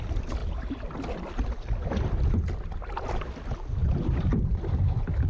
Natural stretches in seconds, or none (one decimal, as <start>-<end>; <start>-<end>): 0.0-0.4; 3.4-3.8